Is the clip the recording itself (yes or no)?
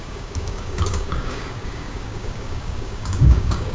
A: no